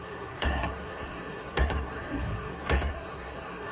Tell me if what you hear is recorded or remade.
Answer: remade